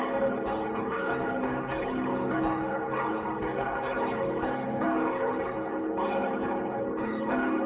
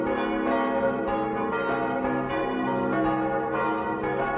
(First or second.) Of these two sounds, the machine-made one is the first